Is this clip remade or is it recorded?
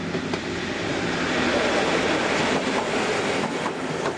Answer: recorded